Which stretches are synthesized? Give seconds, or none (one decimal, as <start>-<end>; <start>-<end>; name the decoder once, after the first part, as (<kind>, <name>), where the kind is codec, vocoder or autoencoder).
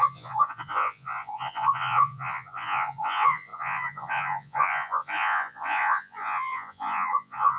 0.0-7.6 (vocoder, Vocos)